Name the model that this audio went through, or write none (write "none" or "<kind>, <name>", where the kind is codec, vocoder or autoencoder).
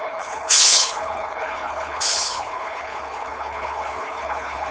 codec, HILCodec